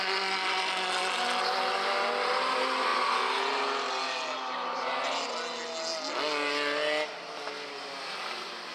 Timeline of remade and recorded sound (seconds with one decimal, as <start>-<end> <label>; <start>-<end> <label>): 0.0-8.7 recorded